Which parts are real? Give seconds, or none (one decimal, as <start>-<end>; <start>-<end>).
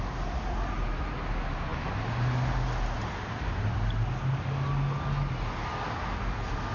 0.0-6.7